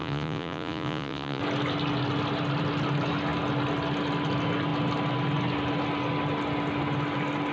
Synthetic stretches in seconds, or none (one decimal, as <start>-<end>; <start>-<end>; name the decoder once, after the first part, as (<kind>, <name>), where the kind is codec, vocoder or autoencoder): 0.0-1.4 (vocoder, Vocos)